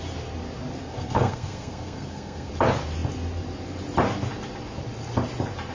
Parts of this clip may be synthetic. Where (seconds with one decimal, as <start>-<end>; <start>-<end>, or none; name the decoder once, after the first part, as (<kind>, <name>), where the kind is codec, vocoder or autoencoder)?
0.8-2.5 (codec, SNAC)